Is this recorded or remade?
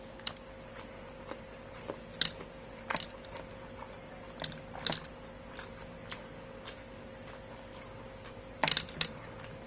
recorded